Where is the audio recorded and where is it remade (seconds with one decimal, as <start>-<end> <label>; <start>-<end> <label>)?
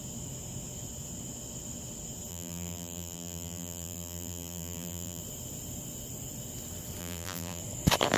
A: 0.0-2.3 recorded; 2.3-5.2 remade; 5.2-7.0 recorded; 7.0-7.6 remade; 7.6-8.2 recorded